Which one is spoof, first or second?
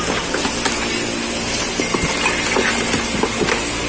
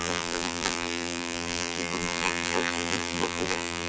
second